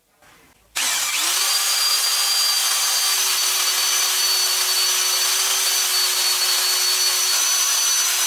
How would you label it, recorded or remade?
recorded